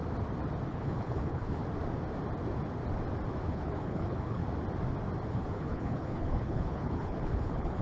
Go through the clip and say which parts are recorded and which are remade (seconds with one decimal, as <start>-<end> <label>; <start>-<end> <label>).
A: 0.0-0.7 recorded; 0.7-1.6 remade; 1.6-3.5 recorded; 3.5-4.4 remade; 4.4-5.3 recorded; 5.3-7.8 remade

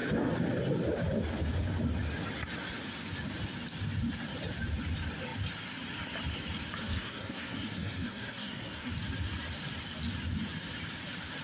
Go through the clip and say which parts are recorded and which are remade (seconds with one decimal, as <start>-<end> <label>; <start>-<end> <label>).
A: 0.0-6.8 recorded; 6.8-8.9 remade; 8.9-11.4 recorded